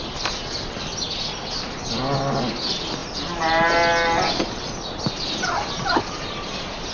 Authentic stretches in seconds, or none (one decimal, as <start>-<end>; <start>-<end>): 0.0-6.9